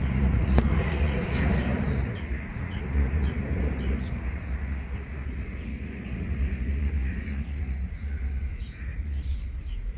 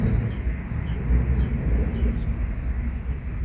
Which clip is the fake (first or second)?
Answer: first